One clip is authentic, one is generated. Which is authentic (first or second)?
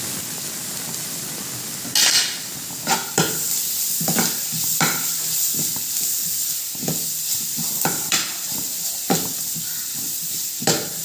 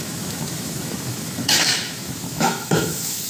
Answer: first